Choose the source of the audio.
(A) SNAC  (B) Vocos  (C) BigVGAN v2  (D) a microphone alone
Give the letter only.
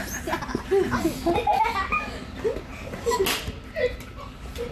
D